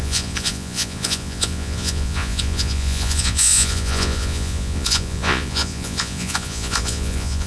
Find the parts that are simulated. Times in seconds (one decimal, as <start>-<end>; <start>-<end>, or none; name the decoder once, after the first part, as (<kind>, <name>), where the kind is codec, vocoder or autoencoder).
0.0-7.5 (vocoder, Vocos)